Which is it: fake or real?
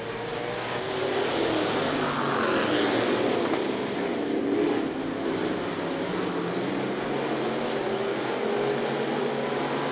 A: real